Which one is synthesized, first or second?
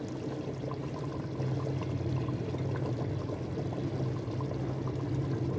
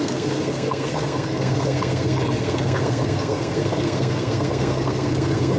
second